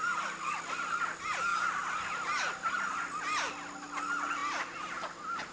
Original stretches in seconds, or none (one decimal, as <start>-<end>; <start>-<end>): 0.0-5.5